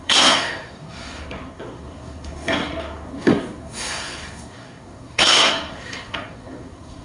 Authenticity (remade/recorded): remade